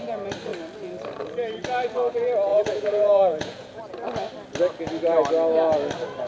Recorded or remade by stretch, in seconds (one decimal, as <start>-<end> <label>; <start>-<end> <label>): 0.0-2.5 recorded; 2.5-3.8 remade; 3.8-6.3 recorded